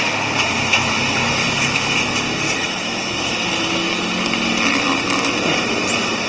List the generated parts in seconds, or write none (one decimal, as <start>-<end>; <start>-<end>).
1.2-3.3